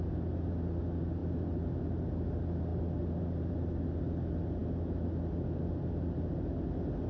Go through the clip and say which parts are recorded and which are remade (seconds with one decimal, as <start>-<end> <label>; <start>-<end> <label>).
0.0-7.1 recorded